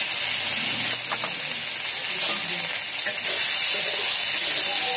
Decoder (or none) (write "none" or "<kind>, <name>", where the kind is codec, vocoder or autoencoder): none